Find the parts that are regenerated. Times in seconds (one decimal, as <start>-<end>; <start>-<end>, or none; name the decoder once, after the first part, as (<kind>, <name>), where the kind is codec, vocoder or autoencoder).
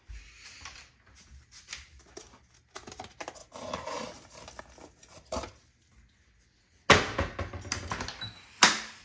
3.4-4.6 (vocoder, BigVGAN v2)